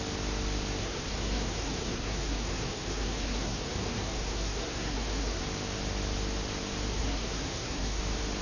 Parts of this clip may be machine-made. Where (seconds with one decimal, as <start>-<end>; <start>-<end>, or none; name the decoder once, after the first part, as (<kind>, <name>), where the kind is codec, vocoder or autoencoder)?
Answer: 0.8-5.4 (codec, SNAC); 6.9-8.0